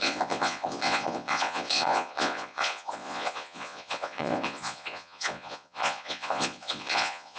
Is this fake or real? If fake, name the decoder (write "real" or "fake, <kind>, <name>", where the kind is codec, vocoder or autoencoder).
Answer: fake, vocoder, Vocos